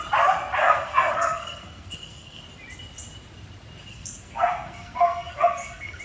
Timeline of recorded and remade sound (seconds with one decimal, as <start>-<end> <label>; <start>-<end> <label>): 0.0-0.6 recorded; 0.6-2.4 remade; 2.4-3.9 recorded; 3.9-6.0 remade